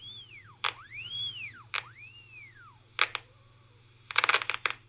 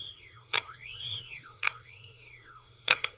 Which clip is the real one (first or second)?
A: first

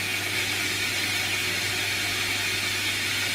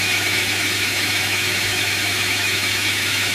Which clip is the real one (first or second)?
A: first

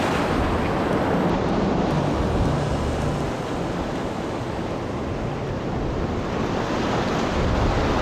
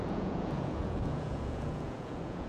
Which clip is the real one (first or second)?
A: first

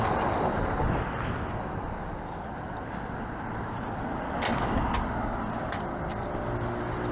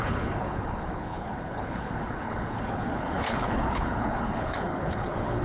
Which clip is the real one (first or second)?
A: first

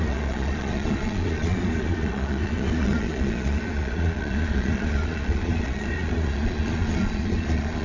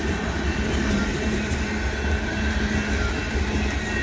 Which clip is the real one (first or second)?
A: second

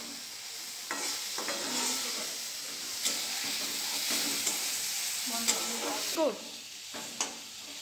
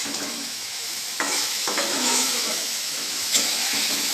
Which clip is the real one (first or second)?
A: first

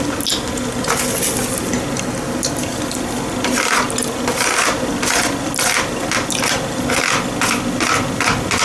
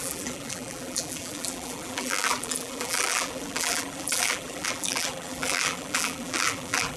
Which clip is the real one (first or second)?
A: first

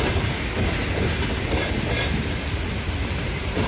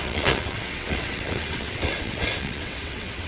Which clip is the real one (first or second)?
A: first